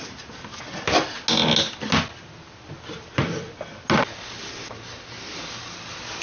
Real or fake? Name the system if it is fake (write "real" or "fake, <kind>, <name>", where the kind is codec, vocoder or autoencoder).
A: real